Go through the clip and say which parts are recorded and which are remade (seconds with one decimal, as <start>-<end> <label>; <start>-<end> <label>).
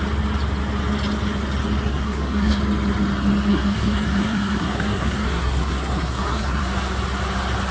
0.0-1.9 recorded; 1.9-2.6 remade; 2.6-3.5 recorded; 3.5-6.6 remade; 6.6-7.7 recorded